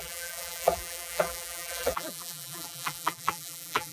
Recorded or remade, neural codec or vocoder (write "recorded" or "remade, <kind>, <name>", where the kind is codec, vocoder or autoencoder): remade, vocoder, BigVGAN v2